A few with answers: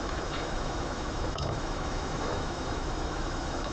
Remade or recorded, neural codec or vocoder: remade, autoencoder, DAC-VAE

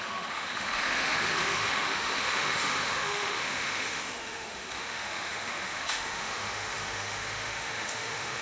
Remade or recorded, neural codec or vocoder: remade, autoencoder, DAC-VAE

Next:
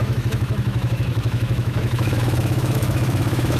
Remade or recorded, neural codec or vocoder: remade, autoencoder, DAC-VAE